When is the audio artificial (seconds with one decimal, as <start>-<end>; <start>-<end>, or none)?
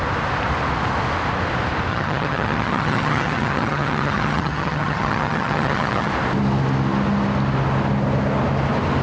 1.9-6.1